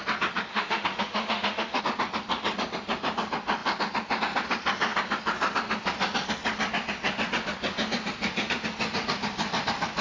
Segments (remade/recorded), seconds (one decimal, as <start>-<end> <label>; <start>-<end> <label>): 0.0-0.5 recorded; 0.5-1.8 remade; 1.8-10.0 recorded